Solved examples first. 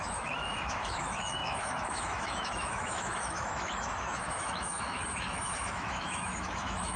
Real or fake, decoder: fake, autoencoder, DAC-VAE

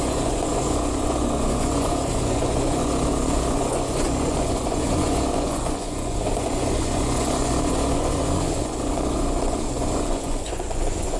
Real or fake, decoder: fake, vocoder, Vocos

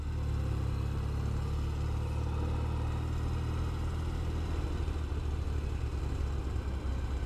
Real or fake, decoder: real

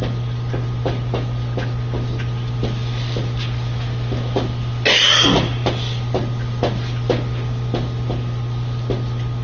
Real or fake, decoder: real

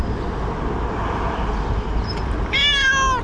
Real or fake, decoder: real